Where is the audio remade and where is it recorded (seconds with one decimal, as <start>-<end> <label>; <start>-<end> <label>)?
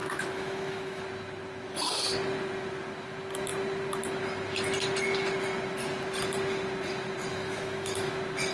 0.0-1.0 remade; 1.0-7.3 recorded; 7.3-8.1 remade; 8.1-8.5 recorded